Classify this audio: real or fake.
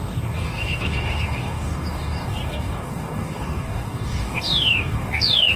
fake